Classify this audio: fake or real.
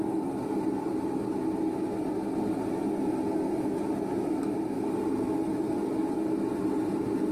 real